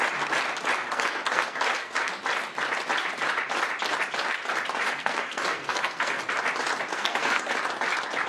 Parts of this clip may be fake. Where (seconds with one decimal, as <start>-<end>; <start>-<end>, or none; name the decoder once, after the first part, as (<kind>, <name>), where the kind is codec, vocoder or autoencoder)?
0.8-2.1 (codec, SNAC); 4.8-6.2; 6.9-7.5